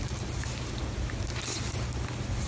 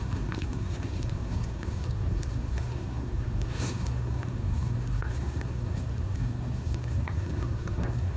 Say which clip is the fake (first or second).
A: second